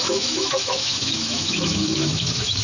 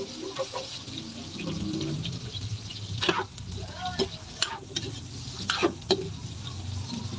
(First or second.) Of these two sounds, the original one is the second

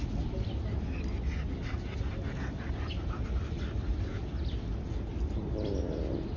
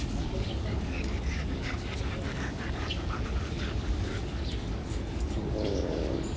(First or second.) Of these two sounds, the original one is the first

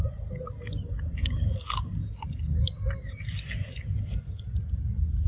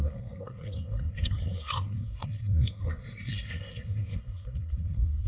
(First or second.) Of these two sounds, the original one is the first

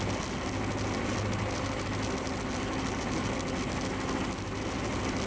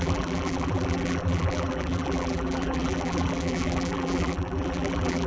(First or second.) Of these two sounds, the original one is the first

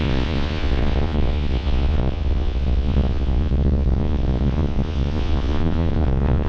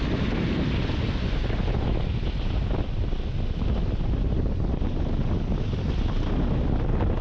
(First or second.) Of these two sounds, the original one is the second